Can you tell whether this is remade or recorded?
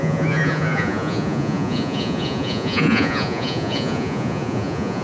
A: remade